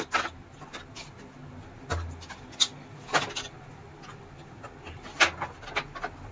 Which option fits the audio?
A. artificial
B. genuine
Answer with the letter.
B